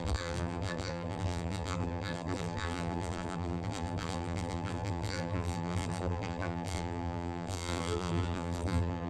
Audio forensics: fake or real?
fake